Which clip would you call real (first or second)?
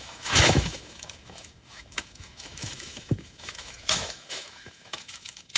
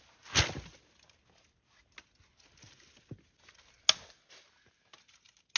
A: second